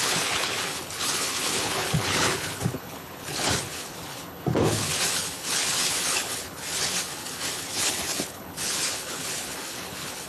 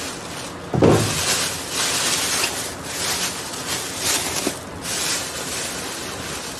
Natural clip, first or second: second